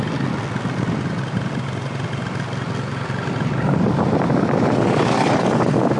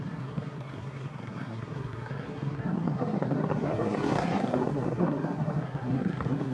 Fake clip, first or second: second